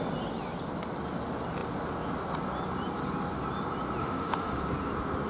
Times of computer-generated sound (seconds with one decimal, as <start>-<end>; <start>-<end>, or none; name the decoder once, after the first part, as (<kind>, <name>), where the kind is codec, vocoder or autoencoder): 4.0-4.6 (autoencoder, DAC-VAE)